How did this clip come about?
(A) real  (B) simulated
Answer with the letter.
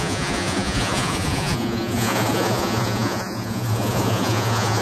B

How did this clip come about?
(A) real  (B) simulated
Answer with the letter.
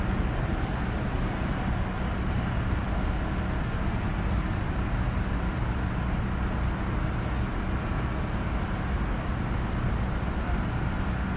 A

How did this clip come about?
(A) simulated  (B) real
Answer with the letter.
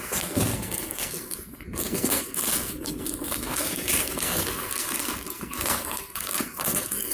A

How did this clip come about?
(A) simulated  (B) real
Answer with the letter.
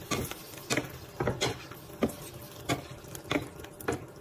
B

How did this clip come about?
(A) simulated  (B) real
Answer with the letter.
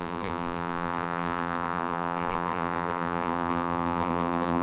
A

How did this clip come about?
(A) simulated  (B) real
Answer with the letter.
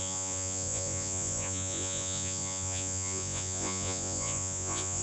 A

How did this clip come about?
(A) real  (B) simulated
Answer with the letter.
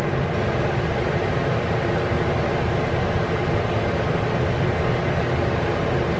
A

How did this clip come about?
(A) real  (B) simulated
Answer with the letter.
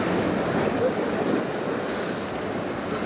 A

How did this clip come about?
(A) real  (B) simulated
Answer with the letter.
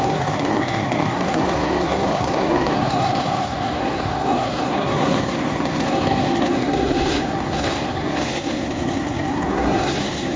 B